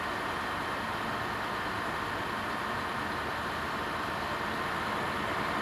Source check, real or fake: real